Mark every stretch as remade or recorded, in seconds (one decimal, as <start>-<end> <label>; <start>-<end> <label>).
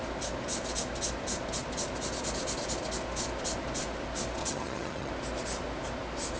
0.0-4.4 recorded; 4.4-5.1 remade; 5.1-6.4 recorded